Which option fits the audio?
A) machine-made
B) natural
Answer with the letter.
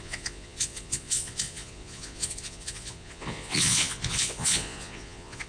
A